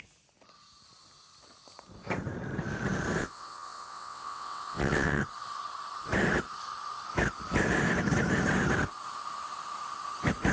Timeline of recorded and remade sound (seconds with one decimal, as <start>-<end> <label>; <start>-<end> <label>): 0.0-3.2 recorded; 3.2-5.2 remade; 5.2-10.5 recorded